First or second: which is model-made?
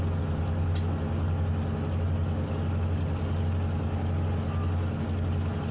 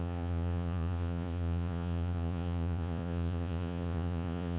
second